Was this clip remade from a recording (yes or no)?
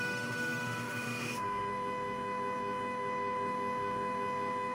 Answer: yes